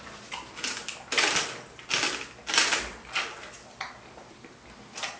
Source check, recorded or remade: recorded